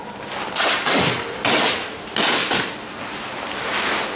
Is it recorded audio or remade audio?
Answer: recorded